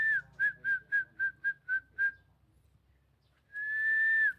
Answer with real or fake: real